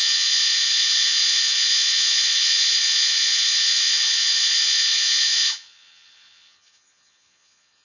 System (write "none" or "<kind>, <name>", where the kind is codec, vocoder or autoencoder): vocoder, Vocos